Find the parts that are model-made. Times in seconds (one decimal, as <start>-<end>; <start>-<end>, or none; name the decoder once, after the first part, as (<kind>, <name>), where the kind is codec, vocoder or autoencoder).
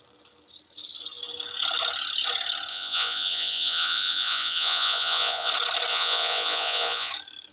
2.7-5.5 (vocoder, Vocos); 5.9-7.1